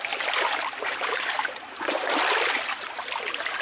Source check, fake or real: real